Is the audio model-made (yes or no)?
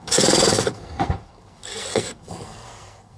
yes